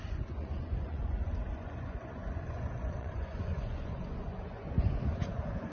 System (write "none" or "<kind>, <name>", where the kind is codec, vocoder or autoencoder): vocoder, Vocos